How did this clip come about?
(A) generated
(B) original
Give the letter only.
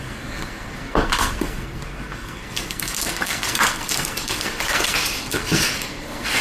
A